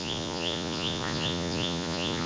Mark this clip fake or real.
fake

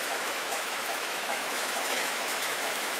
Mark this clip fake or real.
fake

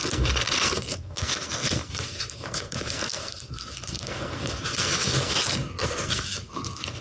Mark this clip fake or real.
fake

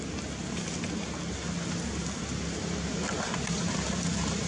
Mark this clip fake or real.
real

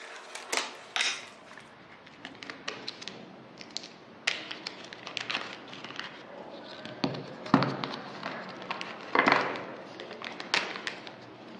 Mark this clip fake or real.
real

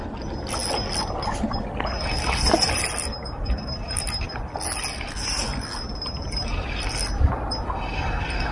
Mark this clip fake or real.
real